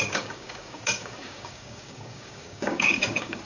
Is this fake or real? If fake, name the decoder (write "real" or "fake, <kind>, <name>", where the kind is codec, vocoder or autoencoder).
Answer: fake, codec, DAC